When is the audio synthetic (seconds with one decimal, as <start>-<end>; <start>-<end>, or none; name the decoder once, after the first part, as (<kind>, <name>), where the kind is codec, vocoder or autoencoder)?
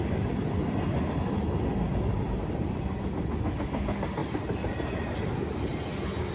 none